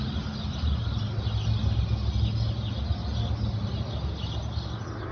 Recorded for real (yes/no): yes